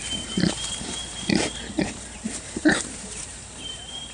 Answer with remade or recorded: remade